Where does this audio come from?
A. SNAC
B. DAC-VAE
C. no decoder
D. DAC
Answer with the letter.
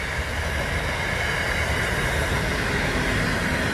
C